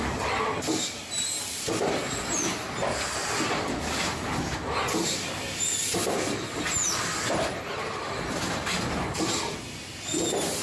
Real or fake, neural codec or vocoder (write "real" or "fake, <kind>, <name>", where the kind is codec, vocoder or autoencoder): real